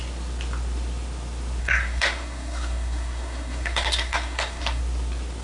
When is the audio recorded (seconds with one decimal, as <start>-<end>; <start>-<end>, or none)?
0.0-1.6; 4.8-5.4